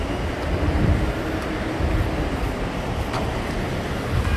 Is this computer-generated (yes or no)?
yes